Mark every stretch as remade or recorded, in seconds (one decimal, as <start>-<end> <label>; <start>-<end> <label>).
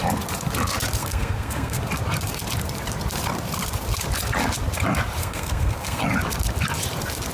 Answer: 0.0-1.0 recorded; 1.0-1.8 remade; 1.8-5.2 recorded; 5.2-6.0 remade; 6.0-7.3 recorded